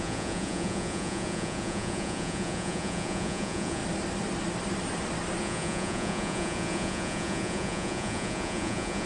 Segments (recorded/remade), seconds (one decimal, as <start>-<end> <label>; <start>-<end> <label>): 0.0-3.8 remade; 3.8-5.4 recorded; 5.4-9.1 remade